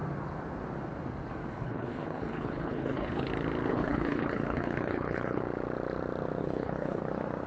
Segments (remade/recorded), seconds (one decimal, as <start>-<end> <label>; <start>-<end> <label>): 0.0-1.5 recorded; 1.5-3.3 remade; 3.3-3.7 recorded; 3.7-5.4 remade; 5.4-6.4 recorded; 6.4-7.0 remade; 7.0-7.5 recorded